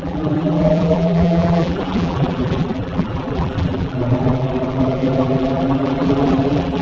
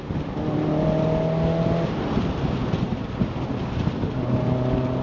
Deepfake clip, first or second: first